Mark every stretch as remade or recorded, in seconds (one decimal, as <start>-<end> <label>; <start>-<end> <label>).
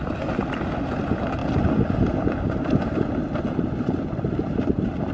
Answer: 0.0-5.1 recorded